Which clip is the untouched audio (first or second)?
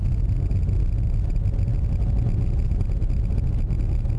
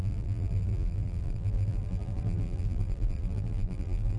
first